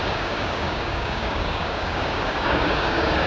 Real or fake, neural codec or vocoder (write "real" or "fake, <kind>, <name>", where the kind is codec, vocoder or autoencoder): fake, codec, DAC